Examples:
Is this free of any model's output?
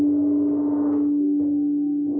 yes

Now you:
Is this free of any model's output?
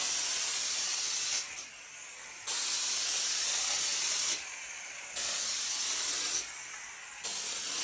yes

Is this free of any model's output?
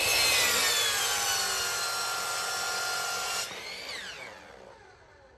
yes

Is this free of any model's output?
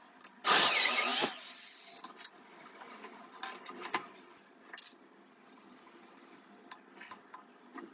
yes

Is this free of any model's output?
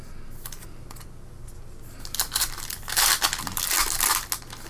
yes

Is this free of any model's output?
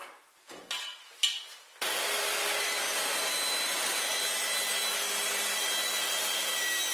yes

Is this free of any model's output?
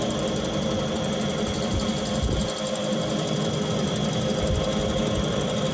yes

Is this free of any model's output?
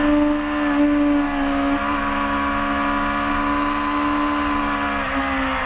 yes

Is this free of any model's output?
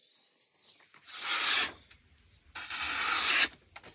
yes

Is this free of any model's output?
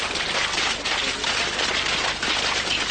yes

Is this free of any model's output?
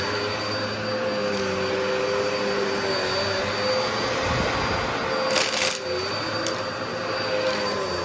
yes